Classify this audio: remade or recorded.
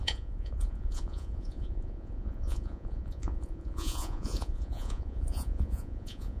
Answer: remade